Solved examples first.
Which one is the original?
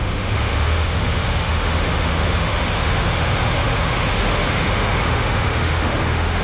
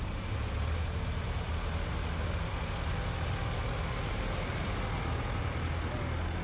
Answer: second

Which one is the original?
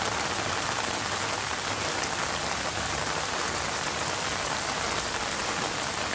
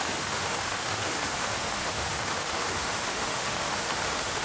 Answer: first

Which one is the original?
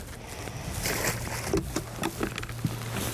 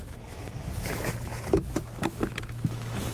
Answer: first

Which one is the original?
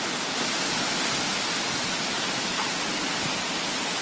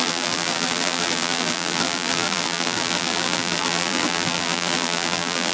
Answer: first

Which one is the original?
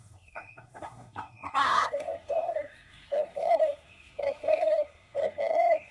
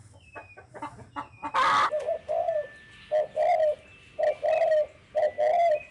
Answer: second